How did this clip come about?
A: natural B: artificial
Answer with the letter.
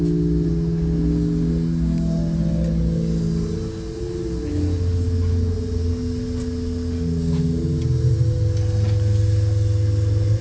A